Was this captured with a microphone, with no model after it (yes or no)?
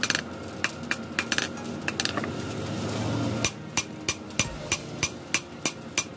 yes